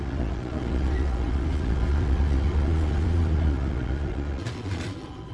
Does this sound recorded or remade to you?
remade